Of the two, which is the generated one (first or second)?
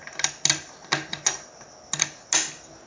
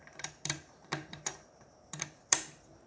second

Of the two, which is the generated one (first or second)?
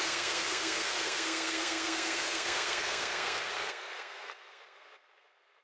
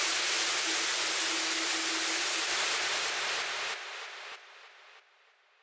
first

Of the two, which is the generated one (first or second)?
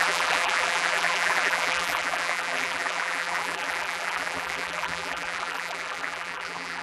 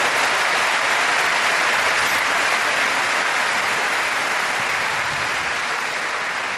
first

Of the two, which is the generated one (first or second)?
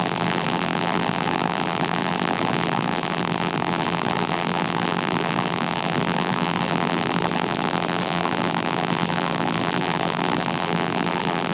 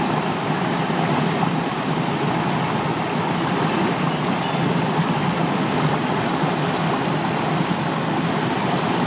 first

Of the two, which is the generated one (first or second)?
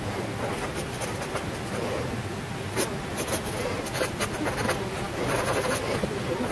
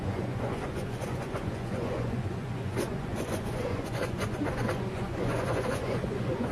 second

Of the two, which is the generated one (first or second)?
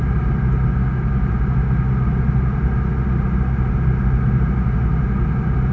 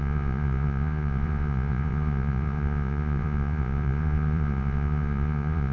second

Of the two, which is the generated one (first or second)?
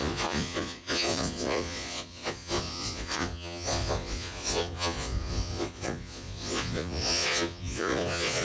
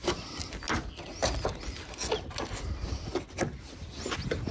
first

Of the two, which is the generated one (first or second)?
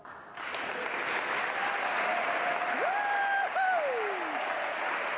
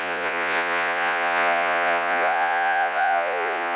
second